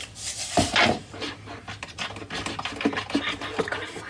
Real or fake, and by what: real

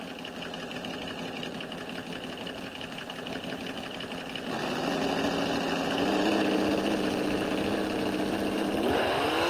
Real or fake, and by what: real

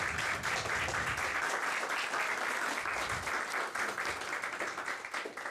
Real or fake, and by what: real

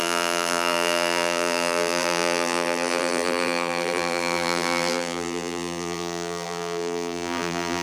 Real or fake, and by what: fake, vocoder, BigVGAN v2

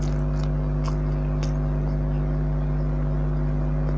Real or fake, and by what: real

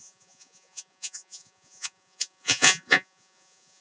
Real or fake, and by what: fake, vocoder, Vocos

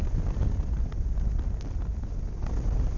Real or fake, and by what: real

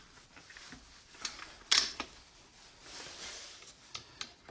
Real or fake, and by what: real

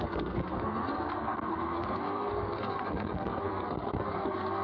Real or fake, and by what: fake, codec, SNAC